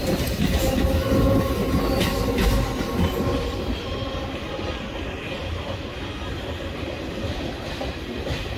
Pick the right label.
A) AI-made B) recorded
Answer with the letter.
B